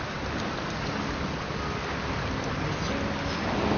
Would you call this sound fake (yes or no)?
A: no